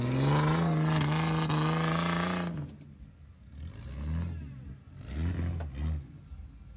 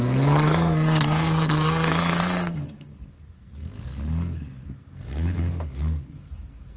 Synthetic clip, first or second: second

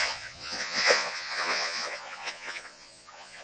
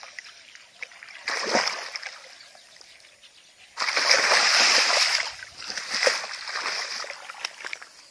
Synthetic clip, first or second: first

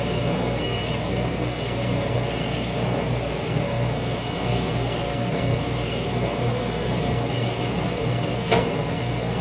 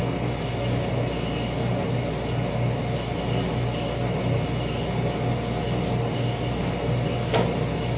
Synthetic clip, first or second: first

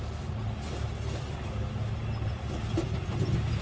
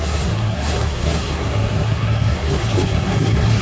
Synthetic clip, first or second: second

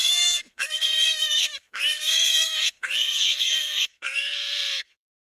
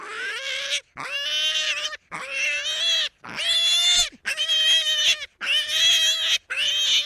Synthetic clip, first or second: first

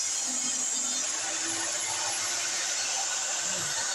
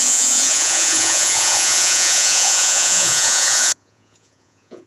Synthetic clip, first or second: second